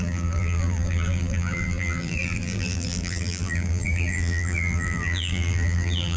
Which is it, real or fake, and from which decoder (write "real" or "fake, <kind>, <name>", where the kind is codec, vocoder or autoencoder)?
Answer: fake, vocoder, BigVGAN v2